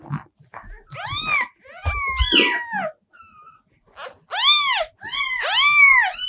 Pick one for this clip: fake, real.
real